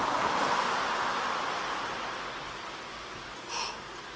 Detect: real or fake real